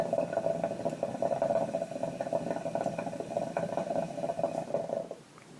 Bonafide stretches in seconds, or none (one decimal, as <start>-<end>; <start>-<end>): 0.0-3.8